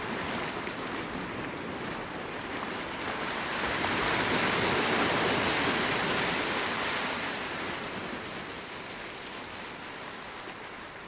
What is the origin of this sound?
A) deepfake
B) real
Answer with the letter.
B